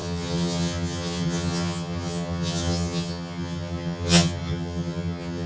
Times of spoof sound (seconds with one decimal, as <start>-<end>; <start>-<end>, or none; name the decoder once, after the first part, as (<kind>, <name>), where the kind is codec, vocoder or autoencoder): 0.0-5.5 (vocoder, HiFi-GAN)